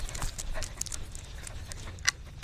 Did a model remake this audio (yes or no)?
no